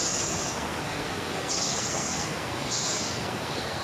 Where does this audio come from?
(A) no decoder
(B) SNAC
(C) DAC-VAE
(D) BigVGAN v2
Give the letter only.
B